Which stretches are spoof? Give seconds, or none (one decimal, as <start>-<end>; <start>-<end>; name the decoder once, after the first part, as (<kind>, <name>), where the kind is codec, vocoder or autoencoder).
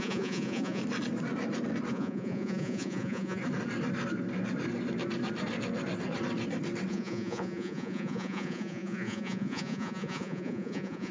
0.0-0.8 (vocoder, Vocos); 1.9-3.4; 6.9-11.1